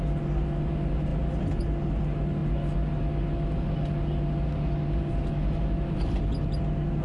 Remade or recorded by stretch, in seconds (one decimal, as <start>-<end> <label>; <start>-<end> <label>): 0.0-7.0 recorded

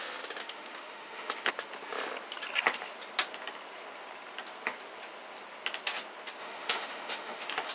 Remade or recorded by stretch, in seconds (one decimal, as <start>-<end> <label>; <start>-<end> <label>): 0.0-0.4 recorded; 0.4-1.5 remade; 1.5-6.4 recorded; 6.4-7.7 remade

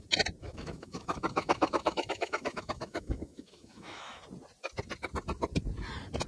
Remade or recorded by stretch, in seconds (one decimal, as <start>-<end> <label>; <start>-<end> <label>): 0.0-0.4 recorded; 0.4-4.2 remade; 4.2-6.3 recorded

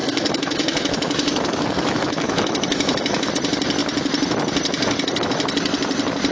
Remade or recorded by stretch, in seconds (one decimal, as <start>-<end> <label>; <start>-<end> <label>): 0.0-3.3 remade; 3.3-6.3 recorded

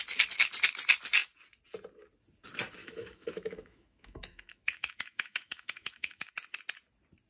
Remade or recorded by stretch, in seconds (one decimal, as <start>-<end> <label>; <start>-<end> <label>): 0.0-2.8 recorded; 2.8-6.3 remade; 6.3-7.3 recorded

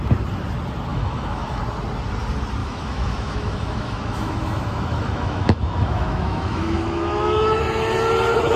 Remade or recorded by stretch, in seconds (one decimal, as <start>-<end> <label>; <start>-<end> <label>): 0.0-0.9 recorded; 0.9-1.6 remade; 1.6-2.6 recorded; 2.6-7.6 remade; 7.6-8.6 recorded

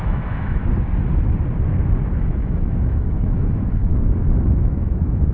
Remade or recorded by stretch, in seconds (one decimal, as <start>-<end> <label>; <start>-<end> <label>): 0.0-0.6 remade; 0.6-2.2 recorded; 2.2-3.9 remade; 3.9-4.5 recorded; 4.5-5.3 remade